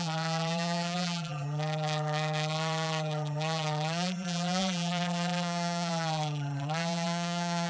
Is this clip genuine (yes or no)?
no